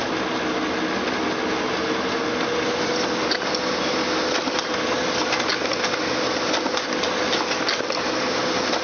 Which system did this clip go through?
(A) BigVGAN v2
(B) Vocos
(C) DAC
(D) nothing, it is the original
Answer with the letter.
D